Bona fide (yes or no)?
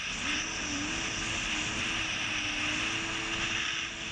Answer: yes